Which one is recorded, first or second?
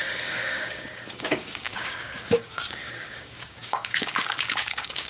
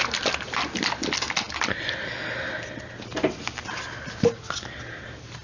second